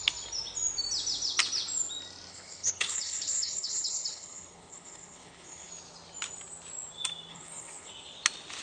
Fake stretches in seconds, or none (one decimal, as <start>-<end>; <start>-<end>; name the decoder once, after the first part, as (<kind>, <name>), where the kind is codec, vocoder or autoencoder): 2.3-5.7 (codec, HILCodec); 7.3-7.9